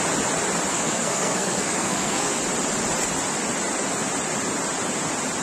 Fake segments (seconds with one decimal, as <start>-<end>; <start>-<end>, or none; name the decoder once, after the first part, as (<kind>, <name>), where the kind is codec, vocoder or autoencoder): 0.7-2.4 (codec, SNAC)